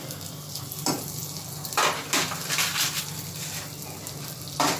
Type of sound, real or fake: real